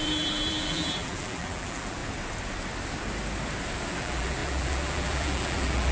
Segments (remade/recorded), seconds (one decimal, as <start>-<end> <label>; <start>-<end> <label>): 0.0-2.0 remade; 2.0-3.9 recorded; 3.9-5.9 remade